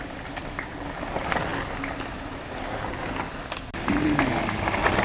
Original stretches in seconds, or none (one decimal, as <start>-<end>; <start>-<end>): 0.0-5.0